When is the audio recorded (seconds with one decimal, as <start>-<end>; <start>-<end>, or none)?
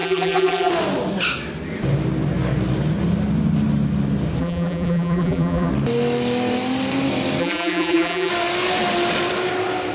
0.7-4.4; 5.7-7.4; 8.3-9.9